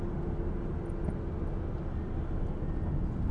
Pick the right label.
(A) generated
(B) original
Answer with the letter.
B